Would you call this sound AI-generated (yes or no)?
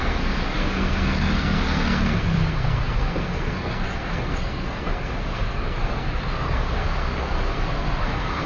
yes